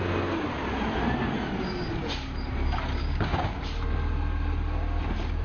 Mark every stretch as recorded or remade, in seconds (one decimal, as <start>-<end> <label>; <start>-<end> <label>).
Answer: 0.0-3.0 recorded; 3.0-3.6 remade; 3.6-5.4 recorded